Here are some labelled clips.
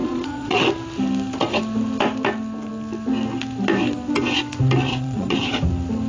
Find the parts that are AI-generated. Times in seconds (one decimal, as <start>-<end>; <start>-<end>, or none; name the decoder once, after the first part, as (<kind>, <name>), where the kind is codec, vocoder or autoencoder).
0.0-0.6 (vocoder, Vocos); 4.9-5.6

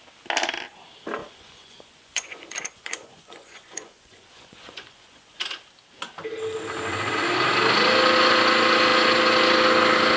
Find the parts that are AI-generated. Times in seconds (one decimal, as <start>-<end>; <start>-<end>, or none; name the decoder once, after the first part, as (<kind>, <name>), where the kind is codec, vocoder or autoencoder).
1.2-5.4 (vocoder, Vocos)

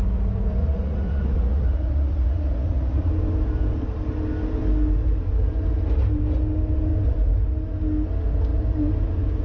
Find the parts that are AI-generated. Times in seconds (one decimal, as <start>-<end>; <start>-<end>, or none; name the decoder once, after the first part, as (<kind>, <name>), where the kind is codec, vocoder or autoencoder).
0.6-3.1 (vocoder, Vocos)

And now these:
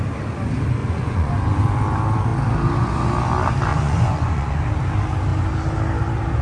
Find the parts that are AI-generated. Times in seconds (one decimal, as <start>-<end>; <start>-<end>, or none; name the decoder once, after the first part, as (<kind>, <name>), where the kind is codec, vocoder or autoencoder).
0.8-1.3 (vocoder, Vocos); 3.7-4.6

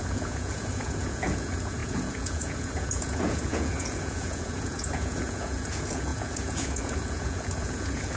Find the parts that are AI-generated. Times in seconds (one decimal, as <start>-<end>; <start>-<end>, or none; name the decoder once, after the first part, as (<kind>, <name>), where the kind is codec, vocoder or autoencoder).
0.0-8.2 (vocoder, Vocos)

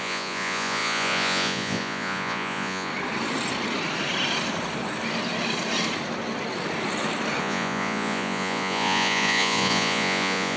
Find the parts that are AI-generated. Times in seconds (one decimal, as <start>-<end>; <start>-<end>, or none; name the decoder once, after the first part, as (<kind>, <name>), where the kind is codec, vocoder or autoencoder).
0.0-2.9 (vocoder, Vocos); 7.4-10.6

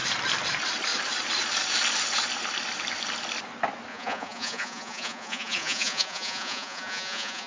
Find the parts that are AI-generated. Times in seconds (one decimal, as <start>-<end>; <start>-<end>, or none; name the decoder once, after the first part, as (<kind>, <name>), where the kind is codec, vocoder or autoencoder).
3.9-7.5 (vocoder, Vocos)